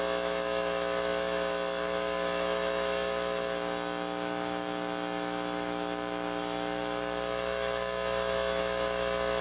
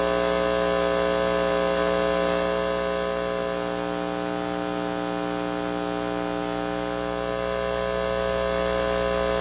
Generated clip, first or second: first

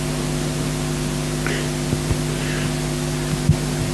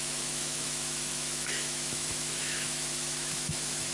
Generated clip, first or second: second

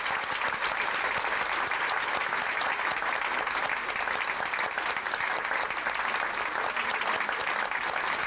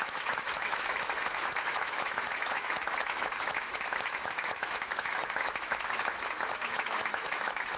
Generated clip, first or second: second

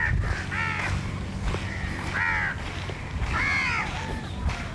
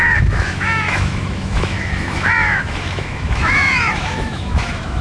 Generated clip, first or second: second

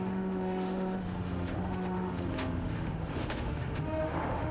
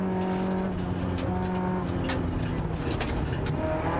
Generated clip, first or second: first